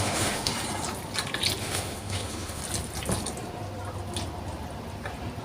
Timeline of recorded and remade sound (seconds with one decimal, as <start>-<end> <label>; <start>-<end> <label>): 0.0-0.5 remade; 0.5-1.6 recorded; 1.6-2.6 remade; 2.6-5.4 recorded